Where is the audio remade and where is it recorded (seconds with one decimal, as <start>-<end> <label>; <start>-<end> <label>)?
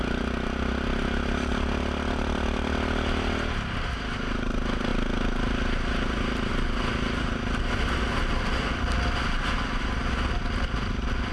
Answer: 0.0-11.3 recorded